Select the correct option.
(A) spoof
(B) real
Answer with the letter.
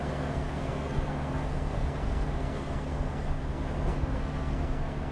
A